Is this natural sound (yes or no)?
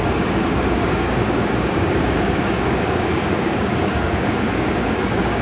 no